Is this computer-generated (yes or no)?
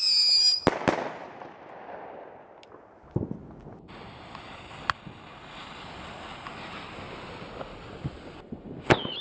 no